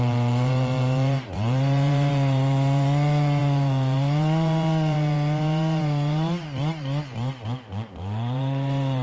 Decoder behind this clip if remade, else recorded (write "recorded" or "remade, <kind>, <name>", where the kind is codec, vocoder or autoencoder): remade, vocoder, BigVGAN v2